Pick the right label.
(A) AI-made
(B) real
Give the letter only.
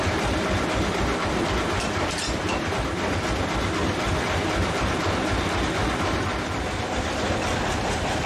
B